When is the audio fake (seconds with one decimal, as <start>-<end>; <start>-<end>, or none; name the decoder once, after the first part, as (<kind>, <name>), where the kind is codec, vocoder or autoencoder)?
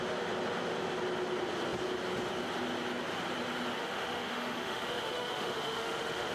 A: 3.8-6.3 (autoencoder, DAC-VAE)